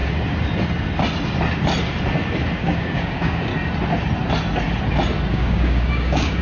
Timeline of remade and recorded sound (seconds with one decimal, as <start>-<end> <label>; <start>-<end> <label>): 0.0-2.6 recorded; 2.6-3.5 remade; 3.5-5.3 recorded; 5.3-6.4 remade